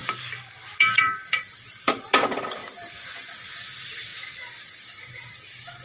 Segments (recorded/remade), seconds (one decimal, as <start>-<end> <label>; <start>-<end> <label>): 0.0-0.5 recorded; 0.5-4.1 remade; 4.1-4.9 recorded; 4.9-5.8 remade